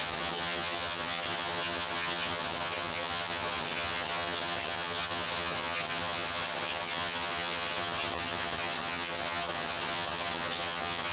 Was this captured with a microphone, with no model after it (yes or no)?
no